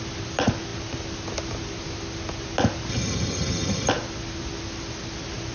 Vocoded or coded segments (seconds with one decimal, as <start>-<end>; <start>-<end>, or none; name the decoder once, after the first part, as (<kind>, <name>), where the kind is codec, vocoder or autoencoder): 2.9-3.9 (vocoder, HiFi-GAN)

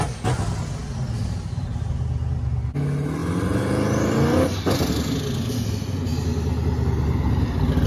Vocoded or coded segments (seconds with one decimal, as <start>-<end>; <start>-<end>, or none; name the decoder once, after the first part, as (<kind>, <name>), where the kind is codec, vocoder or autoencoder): 0.8-1.9 (vocoder, BigVGAN v2)